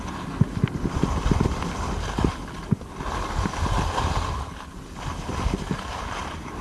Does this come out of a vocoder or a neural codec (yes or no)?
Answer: no